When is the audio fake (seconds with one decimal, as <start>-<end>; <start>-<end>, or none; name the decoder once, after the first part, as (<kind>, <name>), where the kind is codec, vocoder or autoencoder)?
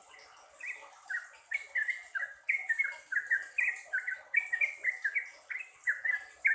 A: none